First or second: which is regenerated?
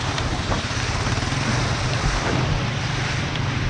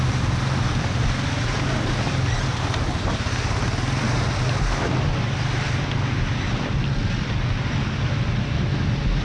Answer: first